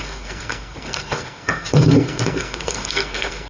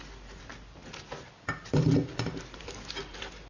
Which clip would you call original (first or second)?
second